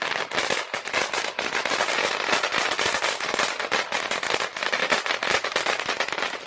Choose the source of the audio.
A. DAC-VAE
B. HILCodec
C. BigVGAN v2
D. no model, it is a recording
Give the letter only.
D